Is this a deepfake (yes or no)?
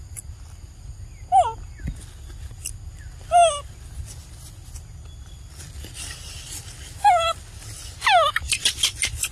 no